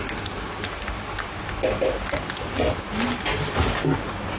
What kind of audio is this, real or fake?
real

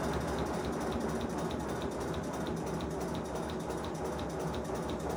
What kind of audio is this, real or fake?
real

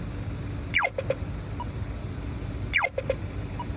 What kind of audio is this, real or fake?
real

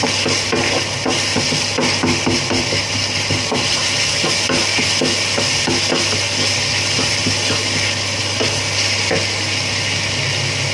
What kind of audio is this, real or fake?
real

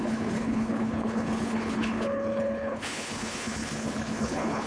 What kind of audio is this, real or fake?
fake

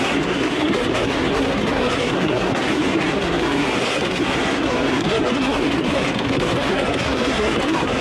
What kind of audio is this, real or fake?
fake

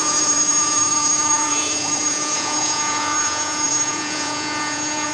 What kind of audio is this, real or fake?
fake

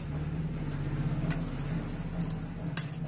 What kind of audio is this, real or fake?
real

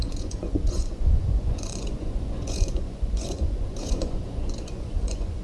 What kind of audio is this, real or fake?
fake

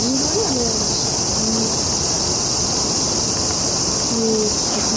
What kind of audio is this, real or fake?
real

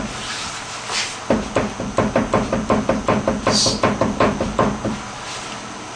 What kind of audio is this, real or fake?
real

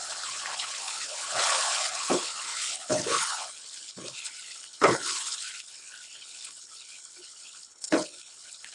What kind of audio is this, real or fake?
fake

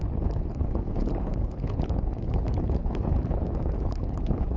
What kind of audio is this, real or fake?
fake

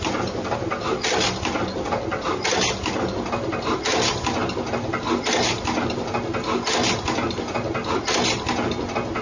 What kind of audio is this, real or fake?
real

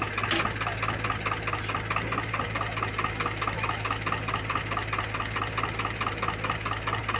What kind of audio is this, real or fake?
real